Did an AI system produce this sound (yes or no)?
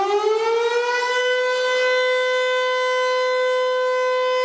no